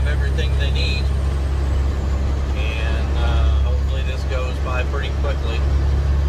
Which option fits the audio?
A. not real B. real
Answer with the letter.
B